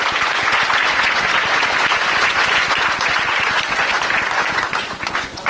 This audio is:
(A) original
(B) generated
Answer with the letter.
B